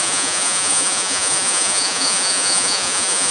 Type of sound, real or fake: fake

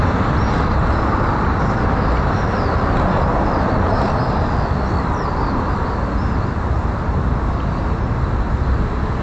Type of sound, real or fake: real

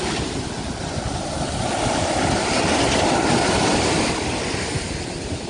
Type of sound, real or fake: real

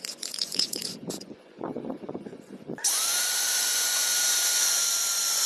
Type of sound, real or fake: fake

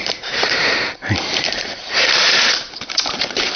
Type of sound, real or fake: fake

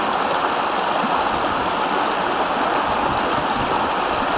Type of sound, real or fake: real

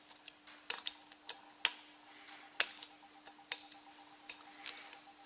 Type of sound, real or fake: real